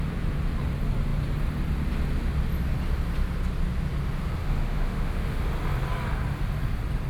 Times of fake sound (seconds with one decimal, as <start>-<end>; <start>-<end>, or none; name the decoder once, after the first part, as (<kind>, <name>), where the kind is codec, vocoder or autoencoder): 4.4-5.4 (autoencoder, DAC-VAE)